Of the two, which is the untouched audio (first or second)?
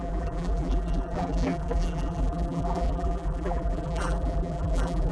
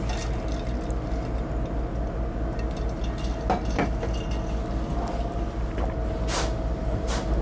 second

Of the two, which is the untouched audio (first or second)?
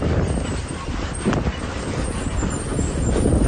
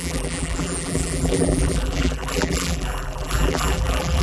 first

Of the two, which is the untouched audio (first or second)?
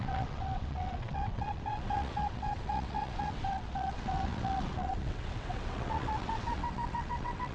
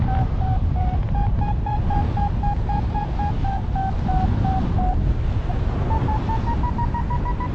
second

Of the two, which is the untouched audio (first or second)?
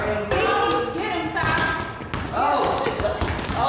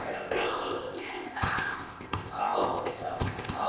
first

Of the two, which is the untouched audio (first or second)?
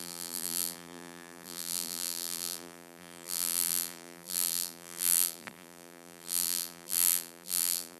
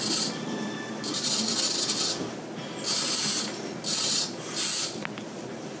second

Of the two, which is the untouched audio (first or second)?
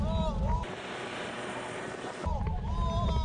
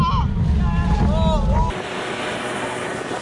second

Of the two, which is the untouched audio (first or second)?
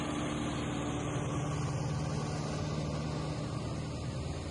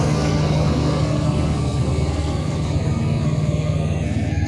first